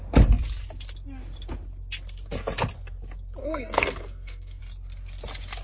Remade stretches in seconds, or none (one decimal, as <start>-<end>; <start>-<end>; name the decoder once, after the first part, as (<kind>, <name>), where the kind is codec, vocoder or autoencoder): 3.4-4.6 (codec, SNAC)